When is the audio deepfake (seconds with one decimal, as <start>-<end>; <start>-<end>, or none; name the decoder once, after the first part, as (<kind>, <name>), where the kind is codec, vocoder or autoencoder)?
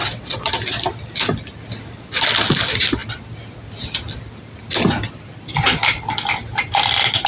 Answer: 0.0-0.5 (vocoder, WaveNeXt)